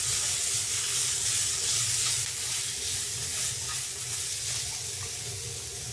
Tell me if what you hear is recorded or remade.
recorded